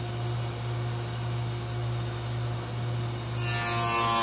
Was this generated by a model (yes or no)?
no